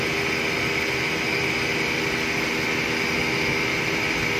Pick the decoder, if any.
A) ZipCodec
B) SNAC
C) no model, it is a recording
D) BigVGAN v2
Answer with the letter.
C